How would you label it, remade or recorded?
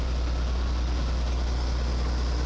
recorded